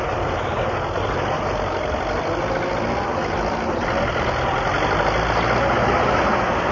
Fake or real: real